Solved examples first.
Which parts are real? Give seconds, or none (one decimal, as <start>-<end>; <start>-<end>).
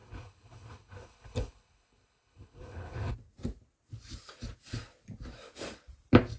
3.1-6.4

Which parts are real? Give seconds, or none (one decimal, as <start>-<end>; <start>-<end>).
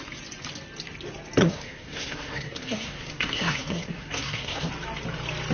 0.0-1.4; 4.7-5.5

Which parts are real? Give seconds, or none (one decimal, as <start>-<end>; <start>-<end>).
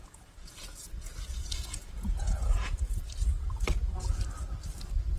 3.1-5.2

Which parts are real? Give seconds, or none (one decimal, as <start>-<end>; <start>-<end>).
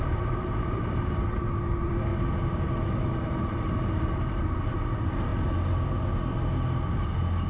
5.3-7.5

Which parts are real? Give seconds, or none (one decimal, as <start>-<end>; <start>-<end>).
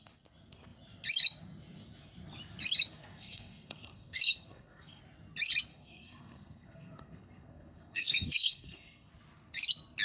0.0-3.1; 5.0-5.7; 9.1-10.0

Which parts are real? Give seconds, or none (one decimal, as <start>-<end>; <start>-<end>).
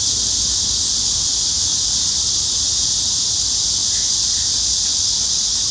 0.0-1.7; 3.3-5.7